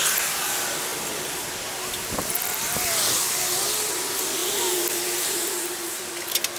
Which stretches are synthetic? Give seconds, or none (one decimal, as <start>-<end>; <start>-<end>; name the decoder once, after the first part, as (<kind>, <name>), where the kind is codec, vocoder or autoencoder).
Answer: 4.4-6.1 (vocoder, BigVGAN v2)

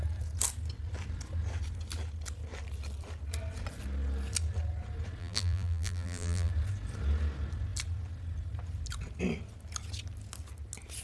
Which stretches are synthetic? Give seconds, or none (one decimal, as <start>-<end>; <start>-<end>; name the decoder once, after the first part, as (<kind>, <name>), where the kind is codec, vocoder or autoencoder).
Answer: 5.2-6.5 (vocoder, BigVGAN v2)

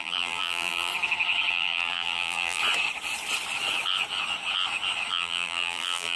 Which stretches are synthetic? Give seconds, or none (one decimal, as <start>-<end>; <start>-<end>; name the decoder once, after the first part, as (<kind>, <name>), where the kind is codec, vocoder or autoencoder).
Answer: 0.0-0.9 (vocoder, BigVGAN v2); 1.5-2.6; 5.1-6.2